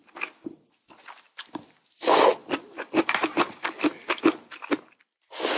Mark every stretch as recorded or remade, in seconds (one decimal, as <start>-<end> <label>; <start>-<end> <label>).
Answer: 0.0-5.6 recorded